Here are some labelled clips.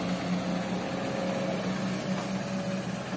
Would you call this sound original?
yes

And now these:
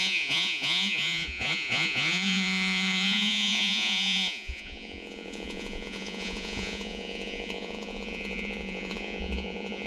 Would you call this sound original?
no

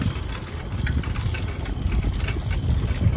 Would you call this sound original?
yes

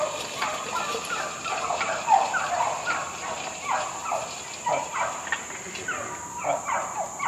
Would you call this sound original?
yes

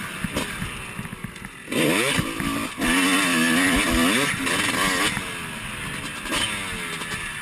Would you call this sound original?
yes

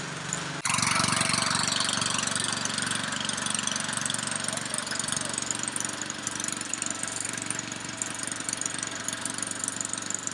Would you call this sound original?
yes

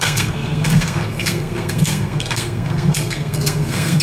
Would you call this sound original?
no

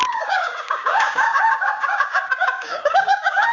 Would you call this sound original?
no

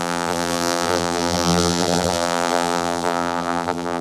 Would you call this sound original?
no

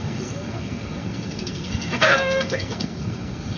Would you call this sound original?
no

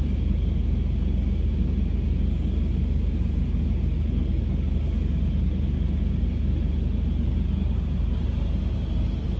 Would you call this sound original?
yes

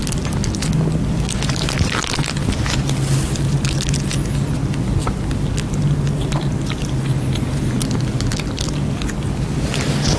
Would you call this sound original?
yes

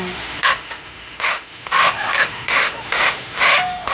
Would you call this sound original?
no